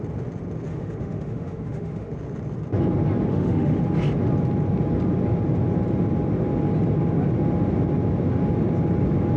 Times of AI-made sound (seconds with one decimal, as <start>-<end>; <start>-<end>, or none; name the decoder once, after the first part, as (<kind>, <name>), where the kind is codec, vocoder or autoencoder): 0.7-2.1 (autoencoder, DAC-VAE); 3.3-3.8